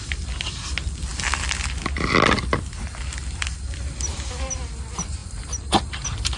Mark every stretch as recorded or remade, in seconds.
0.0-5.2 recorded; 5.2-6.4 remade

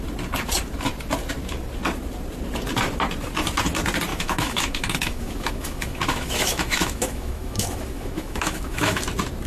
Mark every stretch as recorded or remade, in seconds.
0.0-4.1 recorded; 4.1-9.0 remade; 9.0-9.5 recorded

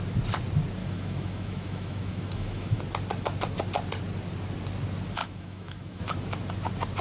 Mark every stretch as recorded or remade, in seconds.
0.0-0.8 recorded; 0.8-2.8 remade; 2.8-5.2 recorded; 5.2-6.0 remade; 6.0-7.0 recorded

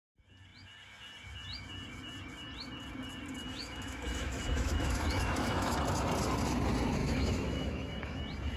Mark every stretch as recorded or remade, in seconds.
0.0-3.4 recorded; 3.4-5.8 remade; 5.8-7.0 recorded; 7.0-8.2 remade; 8.2-8.6 recorded

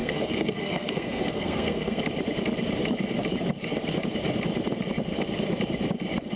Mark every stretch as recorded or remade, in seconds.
0.0-2.0 remade; 2.0-6.4 recorded